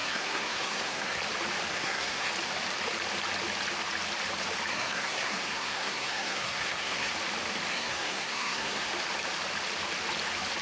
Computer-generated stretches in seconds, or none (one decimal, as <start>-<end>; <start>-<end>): 0.0-1.2; 1.7-2.3; 4.7-7.1; 7.7-8.9